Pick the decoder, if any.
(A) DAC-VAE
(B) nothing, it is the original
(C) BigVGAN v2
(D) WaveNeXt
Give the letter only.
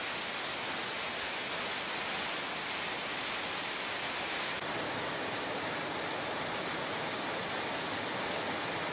B